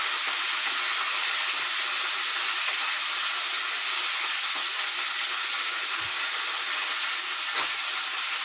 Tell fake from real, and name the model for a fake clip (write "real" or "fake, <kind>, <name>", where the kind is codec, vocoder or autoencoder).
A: real